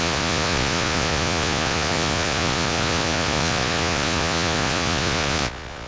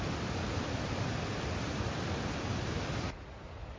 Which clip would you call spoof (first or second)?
first